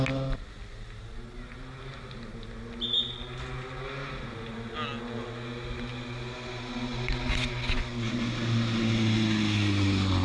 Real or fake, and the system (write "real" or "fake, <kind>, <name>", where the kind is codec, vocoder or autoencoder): real